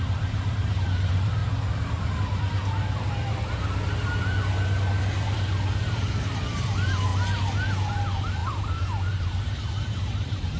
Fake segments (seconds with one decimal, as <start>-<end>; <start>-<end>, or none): 0.0-1.4; 6.6-7.1; 7.9-10.6